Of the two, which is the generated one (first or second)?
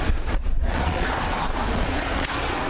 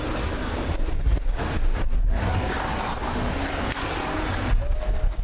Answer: first